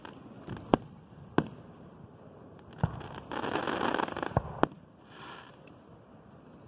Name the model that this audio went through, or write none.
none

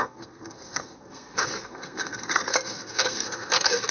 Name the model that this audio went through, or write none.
codec, SNAC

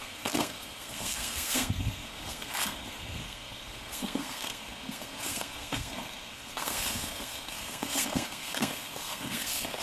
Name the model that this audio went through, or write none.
codec, SNAC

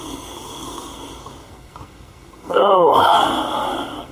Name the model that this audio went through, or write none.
codec, SNAC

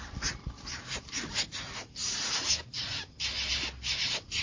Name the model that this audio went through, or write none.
none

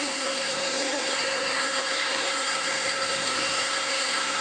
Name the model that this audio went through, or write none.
codec, SNAC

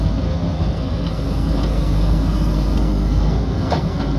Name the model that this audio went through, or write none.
codec, SNAC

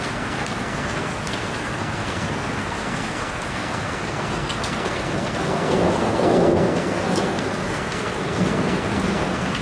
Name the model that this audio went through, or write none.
codec, SNAC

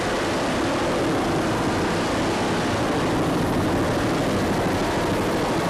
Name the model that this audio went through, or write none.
none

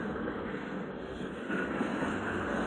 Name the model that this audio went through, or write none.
codec, SNAC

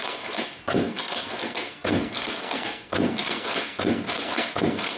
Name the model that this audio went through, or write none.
codec, SNAC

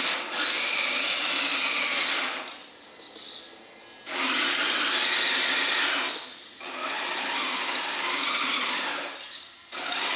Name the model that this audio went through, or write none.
none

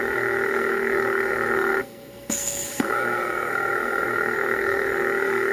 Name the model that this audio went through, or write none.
codec, SNAC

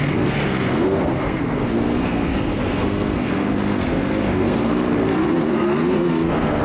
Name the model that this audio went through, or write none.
codec, SNAC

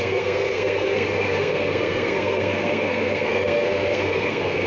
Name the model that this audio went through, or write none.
codec, SNAC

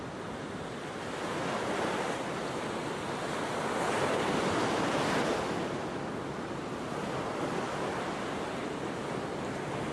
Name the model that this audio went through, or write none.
none